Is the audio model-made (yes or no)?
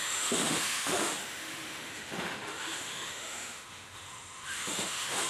yes